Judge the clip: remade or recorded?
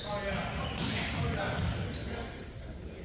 recorded